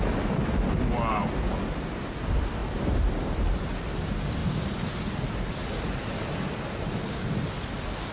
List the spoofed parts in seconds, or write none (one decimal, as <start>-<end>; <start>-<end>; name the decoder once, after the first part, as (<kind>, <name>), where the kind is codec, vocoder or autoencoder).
1.1-1.6 (vocoder, BigVGAN v2); 2.6-3.8; 4.4-4.9